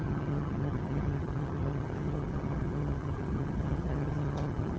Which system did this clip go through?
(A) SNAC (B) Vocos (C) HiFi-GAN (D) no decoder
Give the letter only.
C